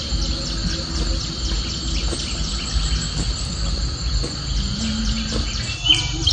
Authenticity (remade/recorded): recorded